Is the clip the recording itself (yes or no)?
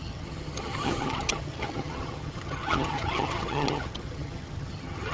no